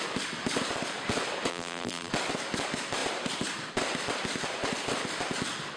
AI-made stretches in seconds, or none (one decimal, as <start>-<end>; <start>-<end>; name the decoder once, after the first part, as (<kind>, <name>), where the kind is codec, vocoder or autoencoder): 1.5-2.1 (vocoder, BigVGAN v2)